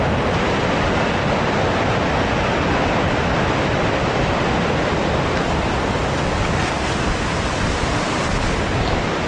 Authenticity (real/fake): real